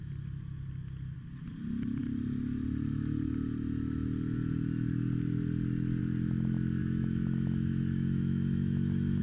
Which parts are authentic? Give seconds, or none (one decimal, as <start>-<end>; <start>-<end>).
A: 0.0-6.8